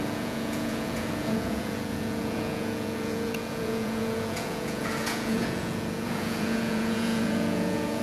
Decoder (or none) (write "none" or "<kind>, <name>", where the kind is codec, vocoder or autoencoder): vocoder, Vocos